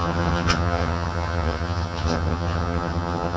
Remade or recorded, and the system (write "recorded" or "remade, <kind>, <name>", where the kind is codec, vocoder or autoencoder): remade, vocoder, HiFi-GAN